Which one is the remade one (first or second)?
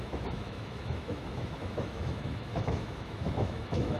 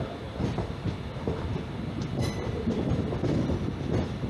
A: first